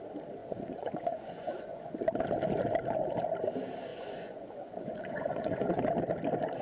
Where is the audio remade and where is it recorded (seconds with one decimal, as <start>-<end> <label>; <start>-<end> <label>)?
0.0-0.4 recorded; 0.4-2.2 remade; 2.2-3.9 recorded; 3.9-5.8 remade; 5.8-6.6 recorded

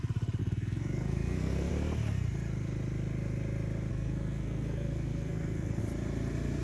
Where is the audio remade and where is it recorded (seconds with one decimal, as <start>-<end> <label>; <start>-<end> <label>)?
0.0-0.4 recorded; 0.4-1.7 remade; 1.7-3.9 recorded; 3.9-5.8 remade; 5.8-6.6 recorded

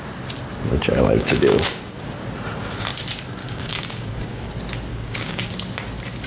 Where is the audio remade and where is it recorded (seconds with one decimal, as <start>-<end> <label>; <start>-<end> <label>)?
0.0-0.9 recorded; 0.9-1.8 remade; 1.8-3.4 recorded; 3.4-4.5 remade; 4.5-4.9 recorded; 4.9-5.5 remade; 5.5-6.3 recorded

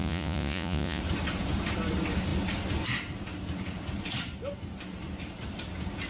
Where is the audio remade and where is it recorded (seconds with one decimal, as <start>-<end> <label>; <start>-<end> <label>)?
0.0-1.0 remade; 1.0-6.1 recorded

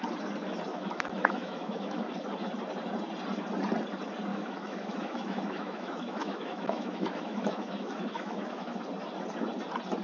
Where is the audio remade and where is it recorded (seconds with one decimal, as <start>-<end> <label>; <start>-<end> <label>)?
0.0-0.7 recorded; 0.7-2.1 remade; 2.1-4.3 recorded; 4.3-8.8 remade; 8.8-10.0 recorded

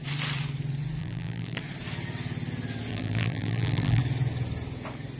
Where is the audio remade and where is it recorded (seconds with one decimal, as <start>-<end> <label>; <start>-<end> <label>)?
0.0-1.0 recorded; 1.0-1.6 remade; 1.6-2.9 recorded; 2.9-4.0 remade; 4.0-5.2 recorded